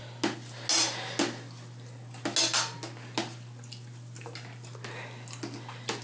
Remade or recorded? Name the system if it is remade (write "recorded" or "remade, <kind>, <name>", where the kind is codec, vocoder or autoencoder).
recorded